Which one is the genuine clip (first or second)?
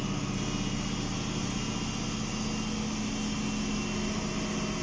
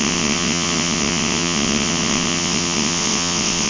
first